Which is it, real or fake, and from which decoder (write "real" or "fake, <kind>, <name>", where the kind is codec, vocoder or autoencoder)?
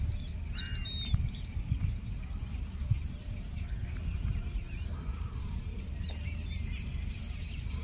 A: fake, vocoder, BigVGAN v2